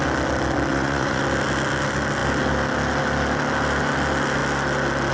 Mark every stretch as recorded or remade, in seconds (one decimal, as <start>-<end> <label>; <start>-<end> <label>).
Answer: 0.0-0.7 recorded; 0.7-1.2 remade; 1.2-5.1 recorded